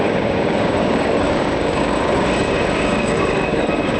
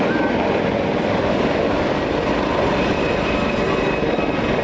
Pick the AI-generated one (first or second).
first